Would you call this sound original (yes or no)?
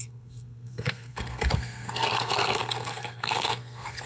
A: no